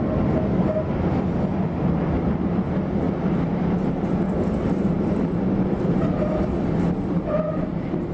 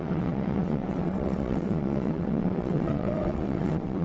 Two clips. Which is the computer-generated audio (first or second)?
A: second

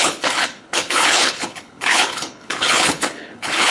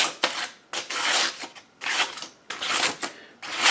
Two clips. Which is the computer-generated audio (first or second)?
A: first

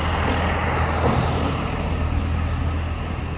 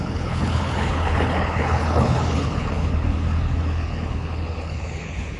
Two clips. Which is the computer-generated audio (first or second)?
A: second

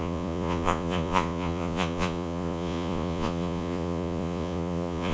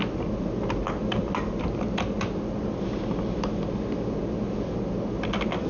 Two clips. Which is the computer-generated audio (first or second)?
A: first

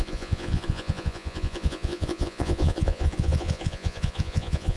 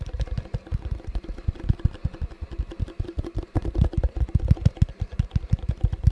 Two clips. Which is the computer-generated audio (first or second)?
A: first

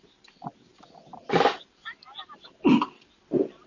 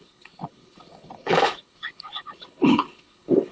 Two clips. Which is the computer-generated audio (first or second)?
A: second